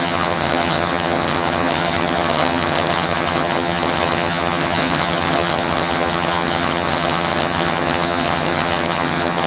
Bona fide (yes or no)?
no